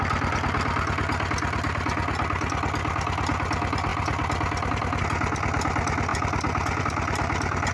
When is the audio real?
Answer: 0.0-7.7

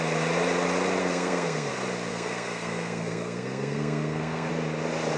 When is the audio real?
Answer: 0.0-1.0; 1.7-2.1; 4.5-5.2

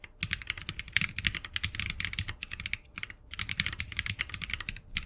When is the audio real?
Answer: 0.0-2.9; 4.5-5.1

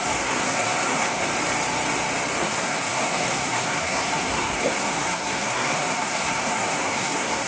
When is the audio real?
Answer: 1.3-2.4

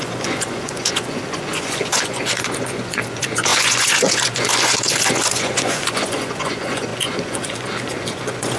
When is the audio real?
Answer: none

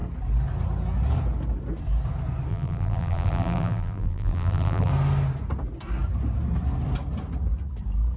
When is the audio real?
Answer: 0.0-2.5; 4.9-8.2

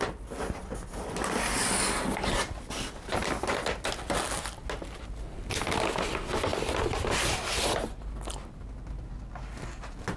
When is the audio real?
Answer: 0.0-10.2